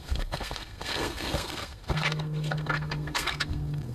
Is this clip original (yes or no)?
no